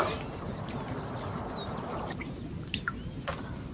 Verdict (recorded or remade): recorded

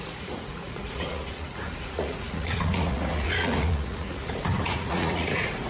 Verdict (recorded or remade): remade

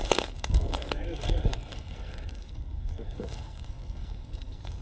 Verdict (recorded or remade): remade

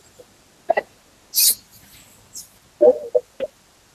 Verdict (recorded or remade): recorded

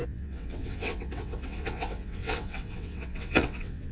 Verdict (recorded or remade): remade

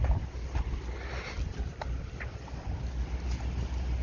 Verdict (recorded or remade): recorded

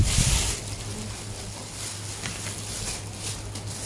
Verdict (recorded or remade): recorded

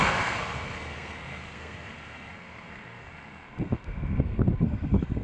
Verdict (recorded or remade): remade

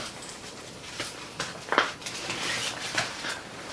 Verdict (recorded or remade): remade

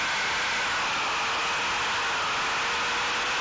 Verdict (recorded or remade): recorded